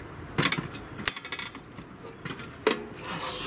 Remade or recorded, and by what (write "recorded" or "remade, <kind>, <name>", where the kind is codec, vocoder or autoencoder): recorded